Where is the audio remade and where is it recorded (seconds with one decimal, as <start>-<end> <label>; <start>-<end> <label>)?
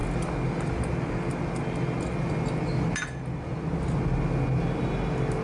0.0-5.4 recorded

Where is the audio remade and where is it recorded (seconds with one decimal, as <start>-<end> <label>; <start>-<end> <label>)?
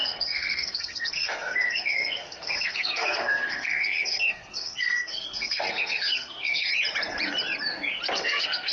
0.0-6.7 remade; 6.7-8.1 recorded; 8.1-8.7 remade